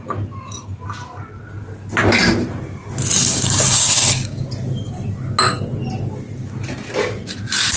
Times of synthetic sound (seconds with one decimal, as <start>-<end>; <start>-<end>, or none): 3.2-4.4